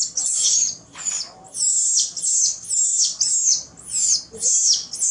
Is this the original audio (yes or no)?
yes